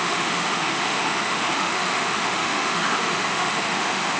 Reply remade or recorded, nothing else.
remade